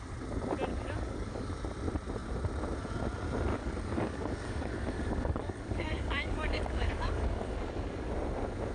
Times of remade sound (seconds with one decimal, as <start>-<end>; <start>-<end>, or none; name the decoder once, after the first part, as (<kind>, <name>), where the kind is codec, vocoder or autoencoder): 0.7-1.5 (codec, DAC); 3.5-8.1